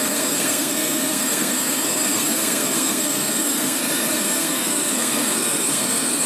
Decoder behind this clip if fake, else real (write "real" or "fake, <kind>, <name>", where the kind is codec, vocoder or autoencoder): fake, codec, SNAC